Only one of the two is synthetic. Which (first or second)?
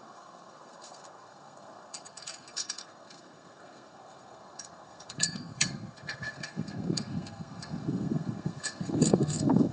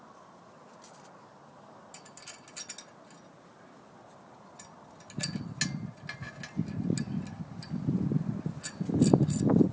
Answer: first